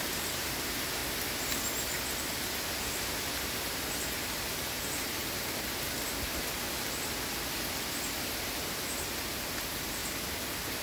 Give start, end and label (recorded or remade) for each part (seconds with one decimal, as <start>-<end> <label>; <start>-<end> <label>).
0.0-1.0 remade; 1.0-2.9 recorded; 2.9-5.2 remade; 5.2-8.6 recorded; 8.6-10.0 remade; 10.0-10.8 recorded